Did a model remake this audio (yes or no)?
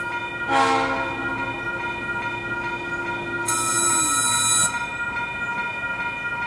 no